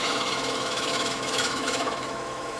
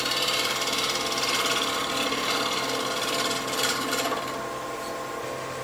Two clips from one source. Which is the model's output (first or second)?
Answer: first